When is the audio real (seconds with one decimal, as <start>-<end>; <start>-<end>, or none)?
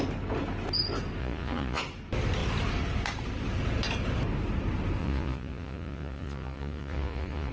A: 0.0-1.2; 1.8-5.0